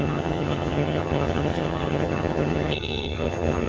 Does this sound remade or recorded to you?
remade